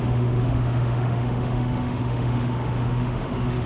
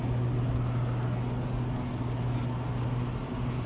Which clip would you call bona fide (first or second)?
second